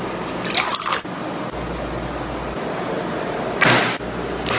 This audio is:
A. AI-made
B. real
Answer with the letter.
B